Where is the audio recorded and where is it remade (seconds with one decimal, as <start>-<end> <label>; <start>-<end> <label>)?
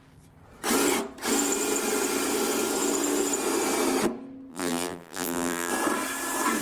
0.0-4.5 recorded; 4.5-5.7 remade; 5.7-6.6 recorded